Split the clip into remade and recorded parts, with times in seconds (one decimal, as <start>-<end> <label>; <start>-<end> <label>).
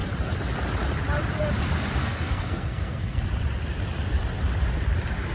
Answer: 0.0-2.0 recorded; 2.0-3.2 remade; 3.2-5.3 recorded